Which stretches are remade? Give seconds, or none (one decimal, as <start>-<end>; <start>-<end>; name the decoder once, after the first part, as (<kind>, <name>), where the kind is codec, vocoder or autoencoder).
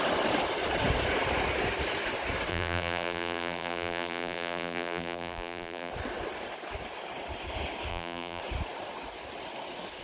2.5-5.9 (vocoder, BigVGAN v2); 7.9-8.4